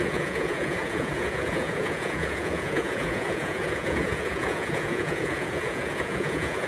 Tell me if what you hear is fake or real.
fake